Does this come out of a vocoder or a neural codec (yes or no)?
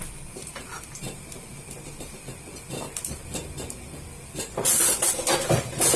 no